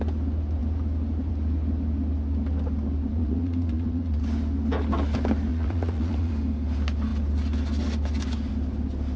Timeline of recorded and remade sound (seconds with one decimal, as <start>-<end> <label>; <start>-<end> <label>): 0.0-3.1 recorded; 3.1-4.2 remade; 4.2-5.5 recorded; 5.5-6.3 remade; 6.3-9.2 recorded